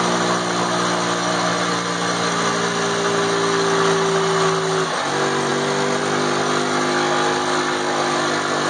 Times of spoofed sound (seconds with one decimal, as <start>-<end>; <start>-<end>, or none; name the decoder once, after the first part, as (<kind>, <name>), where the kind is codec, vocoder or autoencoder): none